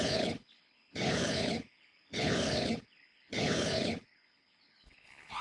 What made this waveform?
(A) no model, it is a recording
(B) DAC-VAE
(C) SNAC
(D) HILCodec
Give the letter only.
D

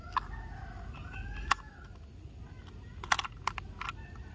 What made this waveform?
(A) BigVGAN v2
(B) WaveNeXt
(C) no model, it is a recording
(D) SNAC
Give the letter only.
C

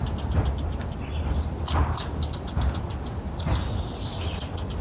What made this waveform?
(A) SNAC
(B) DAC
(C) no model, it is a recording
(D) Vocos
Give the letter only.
C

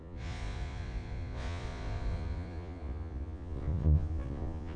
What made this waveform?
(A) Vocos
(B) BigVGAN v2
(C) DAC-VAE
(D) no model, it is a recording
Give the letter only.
A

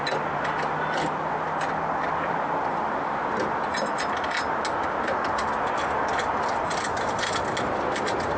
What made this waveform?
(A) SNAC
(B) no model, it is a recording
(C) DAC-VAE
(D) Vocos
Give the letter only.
B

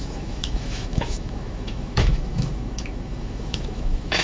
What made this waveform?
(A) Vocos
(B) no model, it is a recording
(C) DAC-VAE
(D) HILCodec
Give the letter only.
C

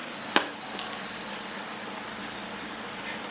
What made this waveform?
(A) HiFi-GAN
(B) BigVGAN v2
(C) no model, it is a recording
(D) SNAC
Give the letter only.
C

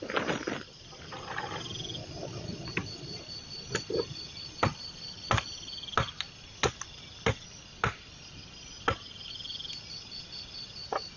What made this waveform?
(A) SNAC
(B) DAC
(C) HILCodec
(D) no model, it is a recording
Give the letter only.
D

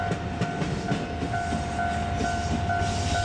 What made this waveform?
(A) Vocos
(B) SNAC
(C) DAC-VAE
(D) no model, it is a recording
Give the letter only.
D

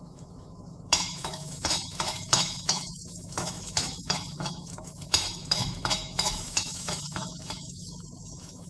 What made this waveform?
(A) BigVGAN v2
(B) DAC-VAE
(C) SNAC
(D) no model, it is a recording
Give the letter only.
B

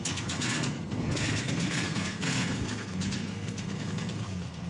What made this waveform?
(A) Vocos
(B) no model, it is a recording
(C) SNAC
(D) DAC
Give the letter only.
C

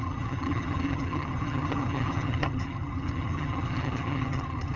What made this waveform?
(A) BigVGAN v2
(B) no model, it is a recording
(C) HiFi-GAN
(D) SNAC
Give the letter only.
C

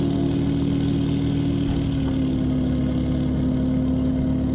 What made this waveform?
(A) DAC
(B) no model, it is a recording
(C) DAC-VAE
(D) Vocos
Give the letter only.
B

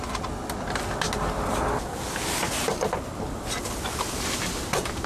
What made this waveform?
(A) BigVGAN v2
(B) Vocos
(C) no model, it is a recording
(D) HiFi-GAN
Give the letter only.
C